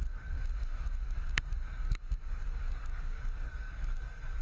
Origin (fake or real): fake